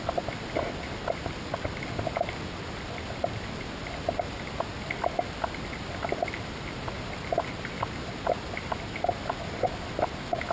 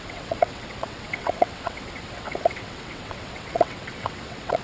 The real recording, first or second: first